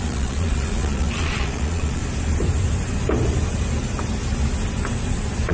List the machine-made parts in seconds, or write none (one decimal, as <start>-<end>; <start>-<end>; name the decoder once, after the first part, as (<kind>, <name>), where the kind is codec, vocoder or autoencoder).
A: 0.0-2.0 (vocoder, Vocos)